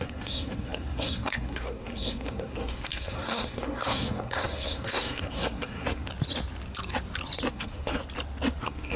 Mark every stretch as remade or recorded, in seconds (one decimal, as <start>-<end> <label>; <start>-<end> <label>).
0.0-6.1 remade; 6.1-7.5 recorded; 7.5-8.0 remade; 8.0-8.6 recorded; 8.6-9.0 remade